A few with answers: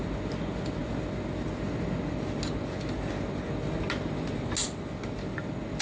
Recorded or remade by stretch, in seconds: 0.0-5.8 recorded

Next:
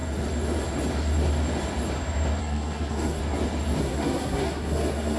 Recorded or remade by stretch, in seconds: 0.0-2.4 recorded; 2.4-3.2 remade; 3.2-3.8 recorded; 3.8-5.2 remade